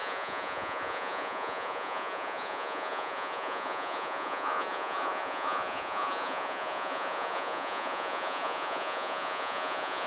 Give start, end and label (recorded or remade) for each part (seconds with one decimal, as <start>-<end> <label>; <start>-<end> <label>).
0.0-10.1 remade